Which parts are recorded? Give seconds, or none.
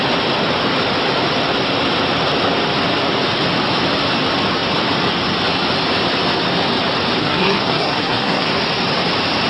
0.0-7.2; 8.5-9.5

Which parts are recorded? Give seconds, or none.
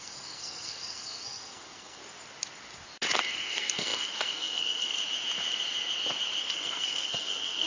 2.0-3.3; 5.0-6.4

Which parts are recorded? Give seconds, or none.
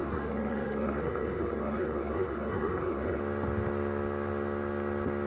3.2-5.3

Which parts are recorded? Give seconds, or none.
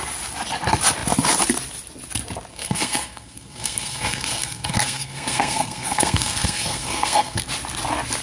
0.0-2.5; 7.4-8.2